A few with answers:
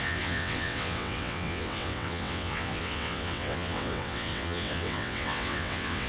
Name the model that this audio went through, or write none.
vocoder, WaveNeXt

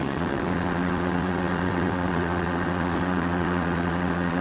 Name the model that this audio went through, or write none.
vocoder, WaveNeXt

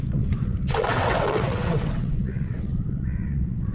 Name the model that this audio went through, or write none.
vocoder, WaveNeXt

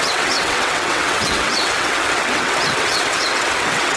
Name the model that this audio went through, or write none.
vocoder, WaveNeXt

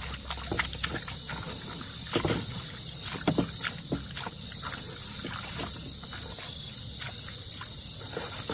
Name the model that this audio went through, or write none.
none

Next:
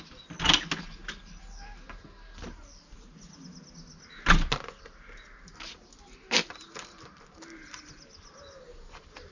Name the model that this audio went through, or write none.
none